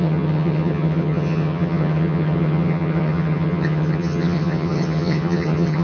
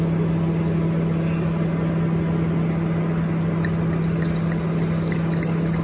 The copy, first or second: first